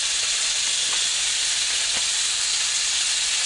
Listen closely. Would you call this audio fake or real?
real